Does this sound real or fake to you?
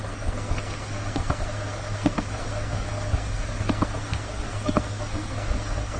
fake